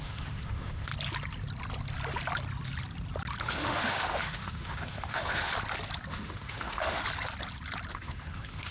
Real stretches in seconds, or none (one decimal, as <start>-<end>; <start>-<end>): 0.9-3.4; 5.5-6.1; 7.0-7.9